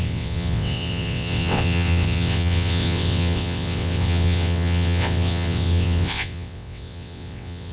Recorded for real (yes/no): no